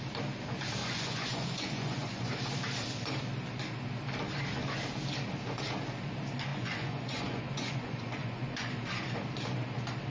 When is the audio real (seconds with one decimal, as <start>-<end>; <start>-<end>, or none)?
0.0-0.8; 2.3-6.5; 8.7-10.1